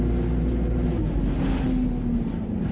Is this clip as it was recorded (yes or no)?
yes